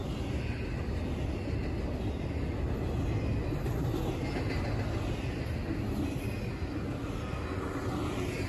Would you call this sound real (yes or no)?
yes